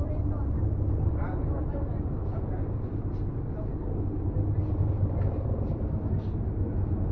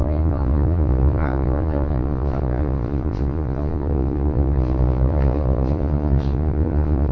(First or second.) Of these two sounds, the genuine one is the first